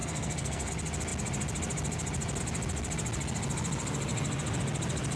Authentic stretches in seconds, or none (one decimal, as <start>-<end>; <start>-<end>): 0.7-5.2